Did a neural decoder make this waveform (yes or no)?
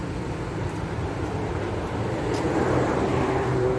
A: yes